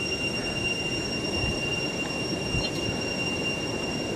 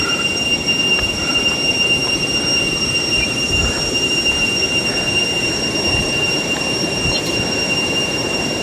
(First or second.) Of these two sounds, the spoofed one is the second